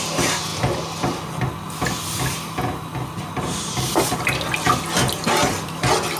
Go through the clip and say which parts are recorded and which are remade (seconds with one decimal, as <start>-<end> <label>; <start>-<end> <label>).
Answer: 0.0-6.2 recorded